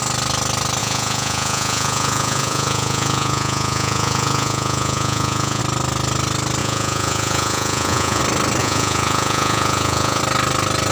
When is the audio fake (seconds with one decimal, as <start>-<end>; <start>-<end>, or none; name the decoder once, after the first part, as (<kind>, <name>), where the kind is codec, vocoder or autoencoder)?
0.8-5.6 (vocoder, Vocos); 6.6-8.2; 8.6-10.2